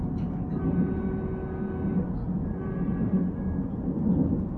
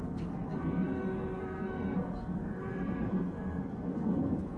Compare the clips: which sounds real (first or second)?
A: first